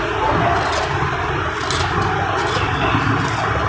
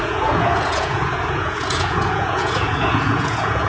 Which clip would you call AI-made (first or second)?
second